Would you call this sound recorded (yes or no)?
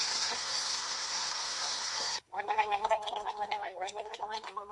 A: no